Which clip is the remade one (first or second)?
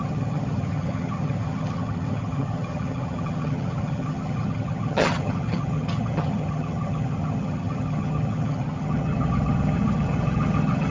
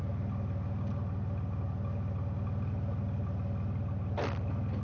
first